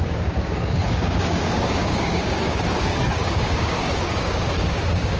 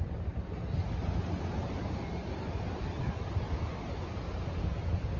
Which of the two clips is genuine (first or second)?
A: second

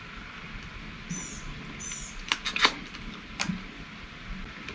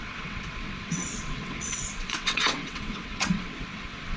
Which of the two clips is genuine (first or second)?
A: first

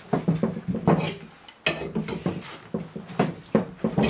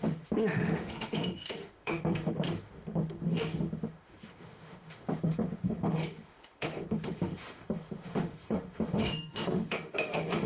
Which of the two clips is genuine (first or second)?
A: first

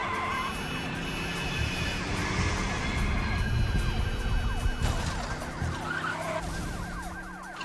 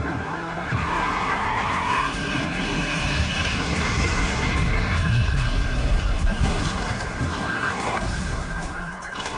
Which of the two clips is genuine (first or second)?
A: first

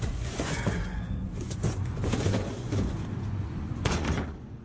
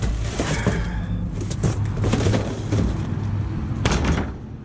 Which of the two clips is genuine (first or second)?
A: second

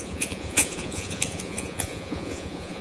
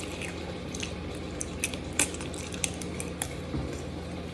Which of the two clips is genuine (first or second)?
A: second